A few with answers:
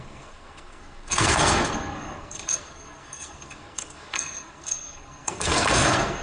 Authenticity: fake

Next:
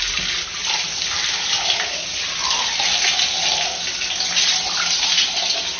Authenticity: real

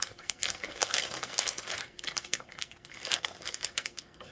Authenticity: fake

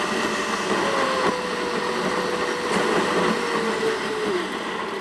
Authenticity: real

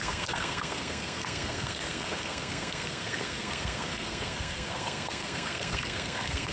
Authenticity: fake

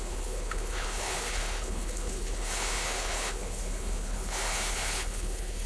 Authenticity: fake